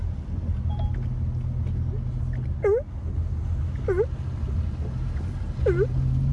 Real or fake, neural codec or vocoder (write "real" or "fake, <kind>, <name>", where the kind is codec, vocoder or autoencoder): real